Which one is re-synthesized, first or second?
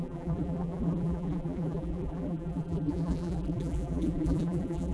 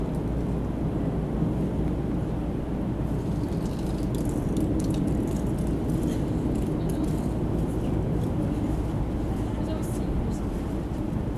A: first